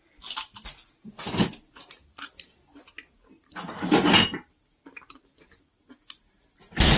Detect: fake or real real